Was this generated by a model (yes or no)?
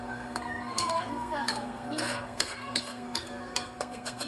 yes